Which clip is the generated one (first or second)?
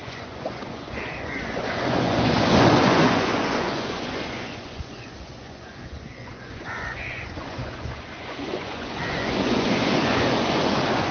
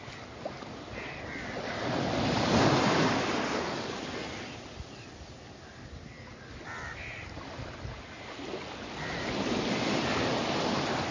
first